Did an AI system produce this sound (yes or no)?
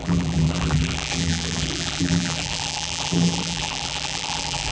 yes